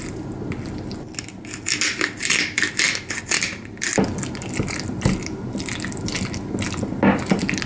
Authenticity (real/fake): real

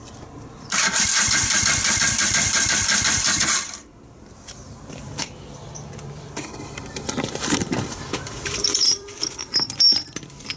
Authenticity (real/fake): fake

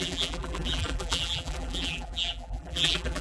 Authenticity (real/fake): fake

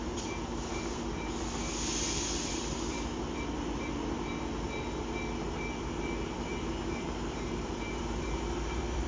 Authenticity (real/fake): fake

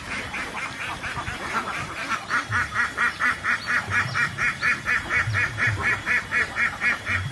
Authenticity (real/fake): fake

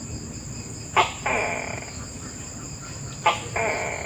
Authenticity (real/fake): real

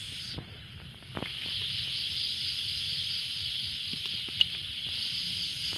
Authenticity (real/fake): real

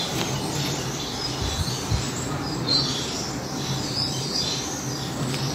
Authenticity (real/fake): fake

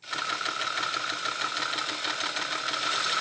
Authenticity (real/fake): real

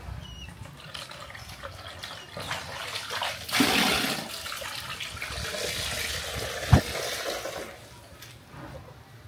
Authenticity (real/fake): real